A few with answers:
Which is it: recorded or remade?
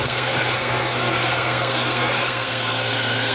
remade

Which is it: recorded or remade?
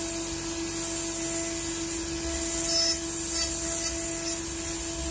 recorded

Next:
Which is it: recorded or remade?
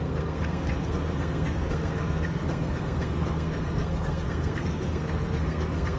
remade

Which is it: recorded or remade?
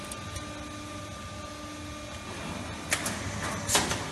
recorded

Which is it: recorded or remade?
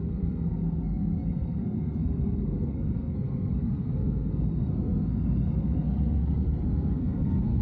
remade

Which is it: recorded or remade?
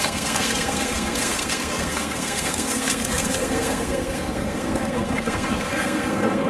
remade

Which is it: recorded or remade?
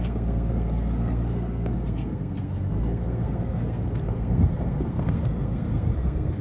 remade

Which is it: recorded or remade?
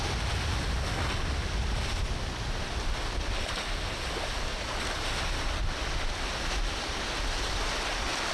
recorded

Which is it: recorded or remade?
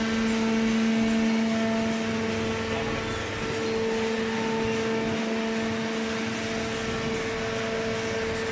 recorded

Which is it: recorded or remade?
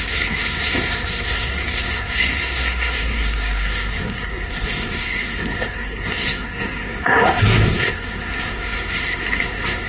remade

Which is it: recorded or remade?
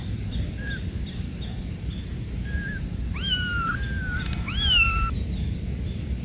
recorded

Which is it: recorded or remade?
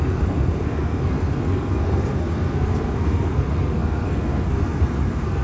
remade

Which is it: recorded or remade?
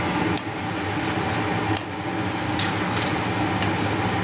recorded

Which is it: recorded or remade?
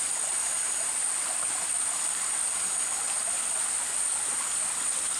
recorded